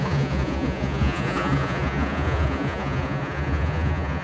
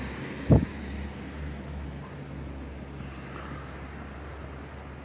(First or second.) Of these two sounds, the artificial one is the first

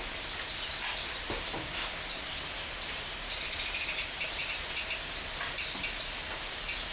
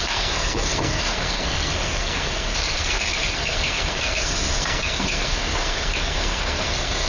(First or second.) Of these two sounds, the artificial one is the second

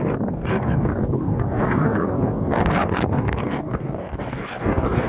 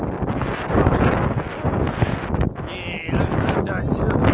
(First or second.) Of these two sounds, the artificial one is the first